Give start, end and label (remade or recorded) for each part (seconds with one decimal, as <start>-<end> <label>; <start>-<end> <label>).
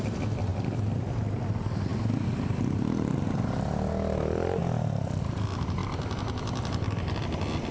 0.0-7.7 recorded